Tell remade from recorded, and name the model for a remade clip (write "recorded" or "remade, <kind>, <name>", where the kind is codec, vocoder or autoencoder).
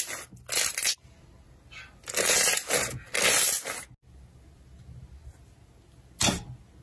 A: recorded